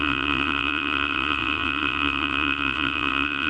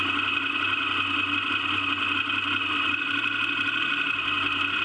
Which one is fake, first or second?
first